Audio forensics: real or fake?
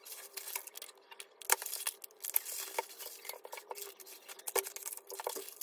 real